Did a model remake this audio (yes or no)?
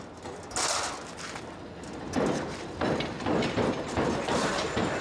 no